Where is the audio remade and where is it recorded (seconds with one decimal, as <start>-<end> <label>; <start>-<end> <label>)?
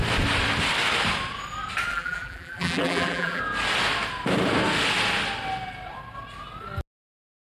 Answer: 0.0-1.9 recorded; 1.9-3.4 remade; 3.4-7.4 recorded